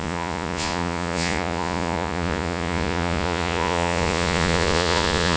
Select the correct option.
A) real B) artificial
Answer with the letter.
B